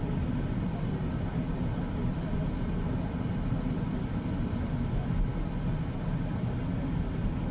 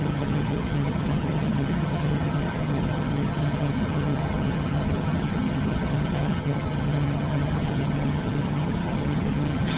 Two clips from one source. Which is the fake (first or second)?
second